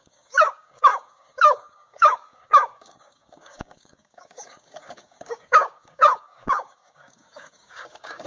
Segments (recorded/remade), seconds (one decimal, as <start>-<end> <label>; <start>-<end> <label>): 0.0-8.3 remade